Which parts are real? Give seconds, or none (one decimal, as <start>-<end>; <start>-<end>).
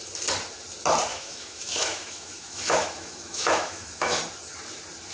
0.0-1.1; 4.2-5.1